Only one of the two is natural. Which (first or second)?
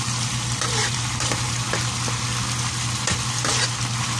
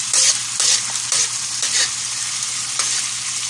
second